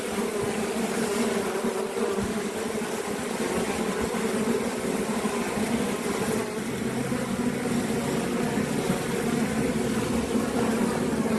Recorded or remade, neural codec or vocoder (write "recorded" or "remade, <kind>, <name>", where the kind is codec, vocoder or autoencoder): recorded